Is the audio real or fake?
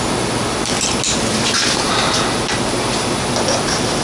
real